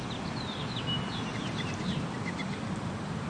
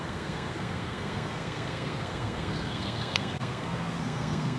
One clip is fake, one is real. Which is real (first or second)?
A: first